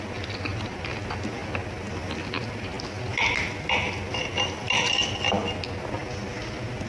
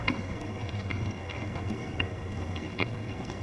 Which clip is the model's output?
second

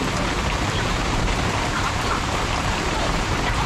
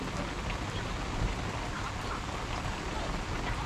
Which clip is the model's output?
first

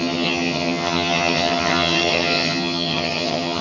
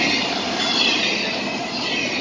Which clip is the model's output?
first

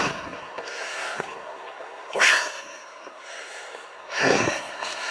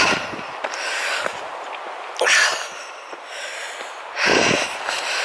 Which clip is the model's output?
first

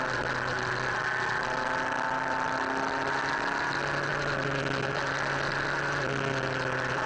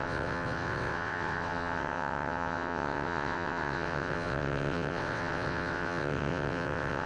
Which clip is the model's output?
second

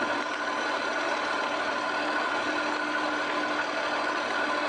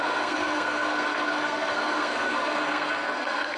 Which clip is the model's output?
second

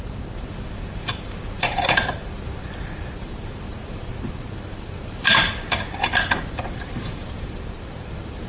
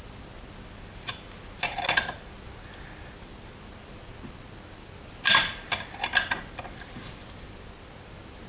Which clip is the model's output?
first